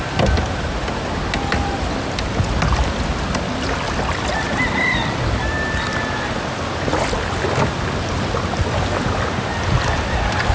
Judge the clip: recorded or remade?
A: recorded